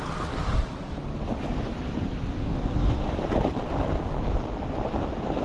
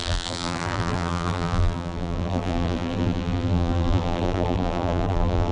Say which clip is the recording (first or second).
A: first